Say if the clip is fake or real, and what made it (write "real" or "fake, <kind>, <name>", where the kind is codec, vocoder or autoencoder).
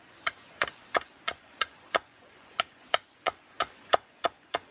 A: fake, vocoder, Vocos